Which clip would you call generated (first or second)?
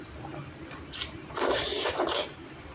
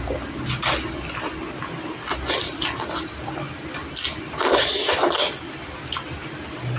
first